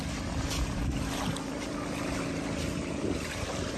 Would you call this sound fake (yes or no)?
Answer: no